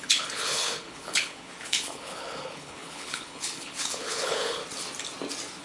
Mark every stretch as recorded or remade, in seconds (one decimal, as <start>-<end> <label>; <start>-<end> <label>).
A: 0.0-4.6 remade; 4.6-5.6 recorded